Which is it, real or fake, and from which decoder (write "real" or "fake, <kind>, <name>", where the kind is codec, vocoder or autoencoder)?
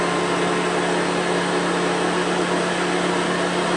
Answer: real